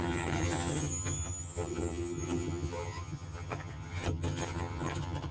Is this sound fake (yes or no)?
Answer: yes